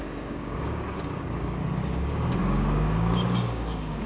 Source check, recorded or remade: remade